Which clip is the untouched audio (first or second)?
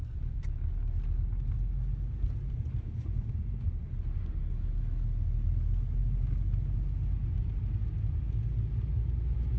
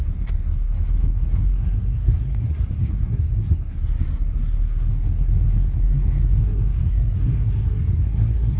first